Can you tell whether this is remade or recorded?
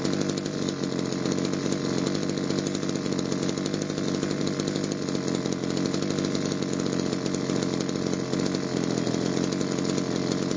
recorded